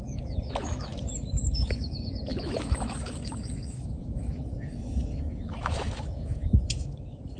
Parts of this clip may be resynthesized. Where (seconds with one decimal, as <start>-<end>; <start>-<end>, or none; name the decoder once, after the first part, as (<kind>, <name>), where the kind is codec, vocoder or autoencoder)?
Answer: 0.0-7.4 (autoencoder, DAC-VAE)

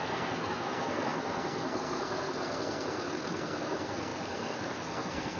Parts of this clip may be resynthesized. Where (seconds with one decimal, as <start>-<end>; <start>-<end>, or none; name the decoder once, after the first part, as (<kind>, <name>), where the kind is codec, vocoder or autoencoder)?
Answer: 0.0-5.4 (codec, SNAC)